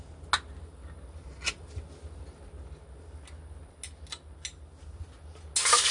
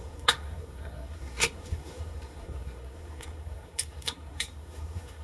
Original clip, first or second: first